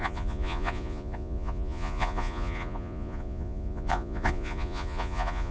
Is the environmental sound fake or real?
fake